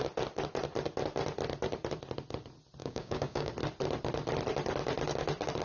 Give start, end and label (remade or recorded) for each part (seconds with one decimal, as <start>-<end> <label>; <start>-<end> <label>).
0.0-2.8 recorded; 2.8-3.5 remade; 3.5-5.6 recorded

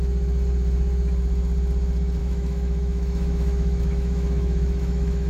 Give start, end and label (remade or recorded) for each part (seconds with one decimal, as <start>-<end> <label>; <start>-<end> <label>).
0.0-2.2 recorded; 2.2-5.3 remade

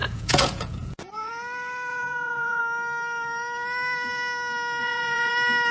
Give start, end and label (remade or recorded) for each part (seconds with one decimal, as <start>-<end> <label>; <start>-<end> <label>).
0.0-1.3 remade; 1.3-1.9 recorded; 1.9-2.6 remade; 2.6-4.8 recorded; 4.8-5.3 remade; 5.3-5.7 recorded

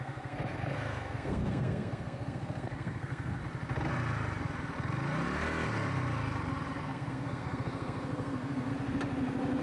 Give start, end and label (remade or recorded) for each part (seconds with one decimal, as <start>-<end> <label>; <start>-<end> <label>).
0.0-3.4 remade; 3.4-6.8 recorded; 6.8-8.7 remade; 8.7-9.6 recorded

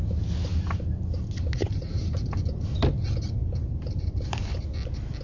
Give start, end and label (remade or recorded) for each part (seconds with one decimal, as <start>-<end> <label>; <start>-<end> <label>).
0.0-1.6 recorded; 1.6-2.1 remade; 2.1-3.4 recorded; 3.4-4.6 remade; 4.6-5.2 recorded

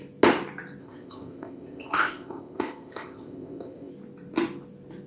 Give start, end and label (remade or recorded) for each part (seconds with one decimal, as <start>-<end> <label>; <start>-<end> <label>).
0.0-0.8 recorded; 0.8-3.9 remade; 3.9-5.1 recorded